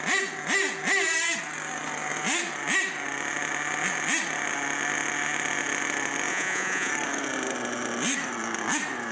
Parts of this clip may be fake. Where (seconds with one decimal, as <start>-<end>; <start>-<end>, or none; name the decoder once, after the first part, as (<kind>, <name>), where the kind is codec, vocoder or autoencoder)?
6.3-6.9 (vocoder, Vocos)